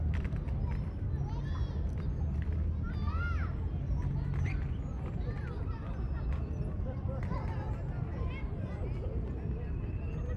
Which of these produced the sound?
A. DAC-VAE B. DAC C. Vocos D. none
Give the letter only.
D